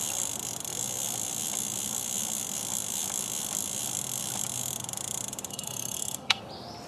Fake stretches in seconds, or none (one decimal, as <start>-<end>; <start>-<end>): 5.5-6.4